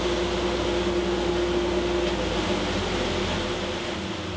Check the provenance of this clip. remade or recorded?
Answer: recorded